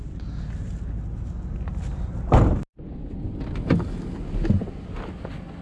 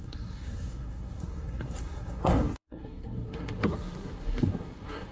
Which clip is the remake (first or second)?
second